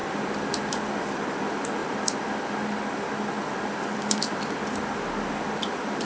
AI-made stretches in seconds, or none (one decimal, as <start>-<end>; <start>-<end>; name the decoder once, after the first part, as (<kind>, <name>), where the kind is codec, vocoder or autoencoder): none